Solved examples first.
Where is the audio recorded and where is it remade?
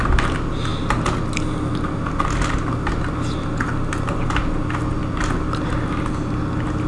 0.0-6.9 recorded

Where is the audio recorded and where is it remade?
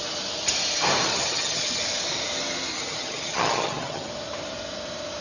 0.0-1.1 recorded; 1.1-1.8 remade; 1.8-2.7 recorded; 2.7-4.1 remade; 4.1-5.2 recorded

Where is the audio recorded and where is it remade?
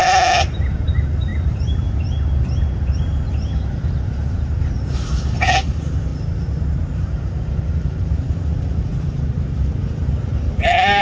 0.0-11.0 remade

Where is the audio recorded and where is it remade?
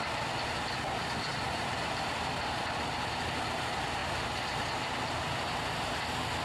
0.0-1.3 recorded; 1.3-2.3 remade; 2.3-4.0 recorded; 4.0-6.0 remade; 6.0-6.4 recorded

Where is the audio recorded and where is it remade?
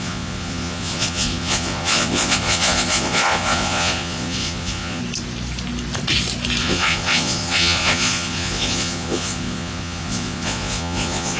0.0-5.0 remade; 5.0-6.6 recorded; 6.6-11.4 remade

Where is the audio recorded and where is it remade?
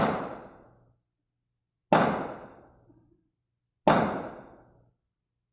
0.0-5.5 recorded